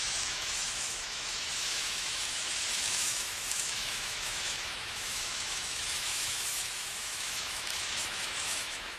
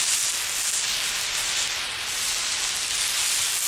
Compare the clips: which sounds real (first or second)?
second